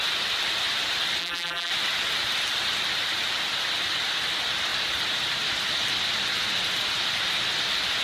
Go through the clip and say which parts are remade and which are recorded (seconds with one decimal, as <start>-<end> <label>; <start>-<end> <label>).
0.0-1.2 recorded; 1.2-1.7 remade; 1.7-8.0 recorded